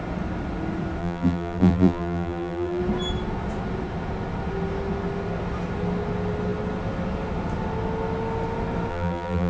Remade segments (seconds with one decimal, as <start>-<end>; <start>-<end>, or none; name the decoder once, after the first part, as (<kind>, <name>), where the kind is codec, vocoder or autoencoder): 1.0-2.8 (vocoder, BigVGAN v2); 8.9-9.5